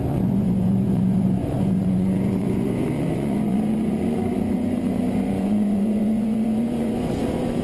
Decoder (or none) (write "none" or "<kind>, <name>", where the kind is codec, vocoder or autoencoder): vocoder, Vocos